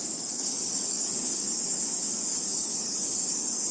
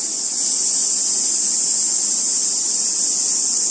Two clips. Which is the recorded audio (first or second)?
second